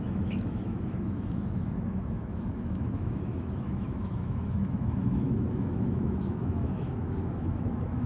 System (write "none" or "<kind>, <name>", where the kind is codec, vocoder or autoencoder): autoencoder, DAC-VAE